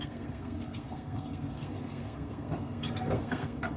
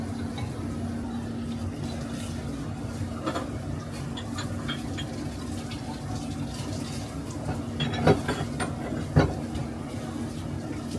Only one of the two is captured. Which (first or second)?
second